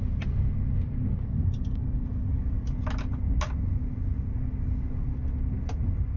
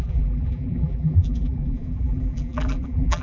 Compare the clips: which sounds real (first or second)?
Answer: first